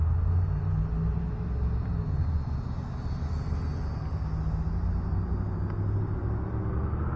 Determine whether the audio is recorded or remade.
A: recorded